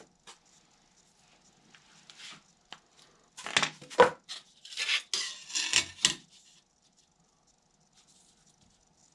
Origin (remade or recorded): recorded